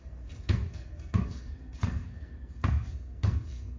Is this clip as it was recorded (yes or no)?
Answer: no